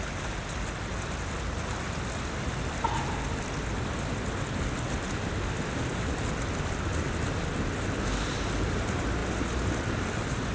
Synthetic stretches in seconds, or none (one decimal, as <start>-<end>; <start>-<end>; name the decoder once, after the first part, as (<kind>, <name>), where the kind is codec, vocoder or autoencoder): none